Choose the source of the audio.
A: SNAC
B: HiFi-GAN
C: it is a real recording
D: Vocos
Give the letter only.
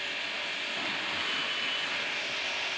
C